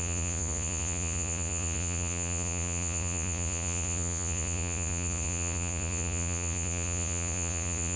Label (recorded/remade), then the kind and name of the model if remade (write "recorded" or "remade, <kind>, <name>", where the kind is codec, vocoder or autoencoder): remade, vocoder, Vocos